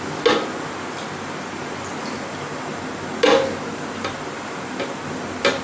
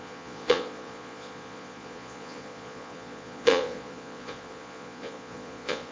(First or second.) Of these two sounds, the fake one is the second